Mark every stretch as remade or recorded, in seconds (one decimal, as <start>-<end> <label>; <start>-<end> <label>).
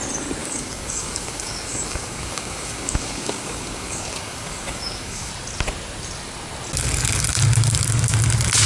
0.0-0.4 recorded; 0.4-5.3 remade; 5.3-8.7 recorded